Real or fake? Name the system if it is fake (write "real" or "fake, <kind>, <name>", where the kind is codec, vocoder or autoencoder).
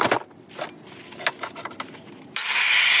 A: real